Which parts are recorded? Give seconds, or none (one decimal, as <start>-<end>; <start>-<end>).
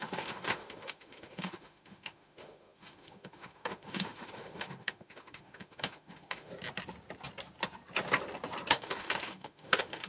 6.5-8.7